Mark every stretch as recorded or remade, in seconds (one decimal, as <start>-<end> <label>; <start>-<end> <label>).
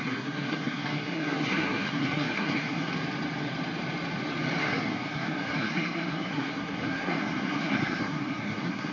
0.0-2.9 remade; 2.9-4.6 recorded; 4.6-8.9 remade